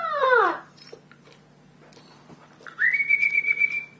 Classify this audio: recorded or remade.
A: remade